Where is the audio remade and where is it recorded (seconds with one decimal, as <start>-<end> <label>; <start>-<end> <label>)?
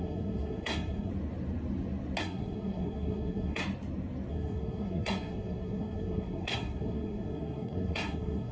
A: 0.0-1.1 remade; 1.1-2.2 recorded; 2.2-3.6 remade; 3.6-4.3 recorded; 4.3-8.5 remade